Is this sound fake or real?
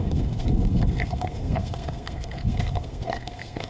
fake